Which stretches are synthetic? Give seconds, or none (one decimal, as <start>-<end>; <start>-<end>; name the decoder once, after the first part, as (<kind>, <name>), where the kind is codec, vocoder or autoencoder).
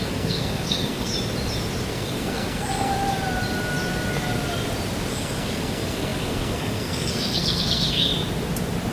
0.0-1.1 (codec, SNAC); 1.9-2.9; 5.1-8.1